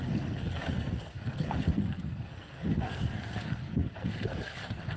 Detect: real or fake fake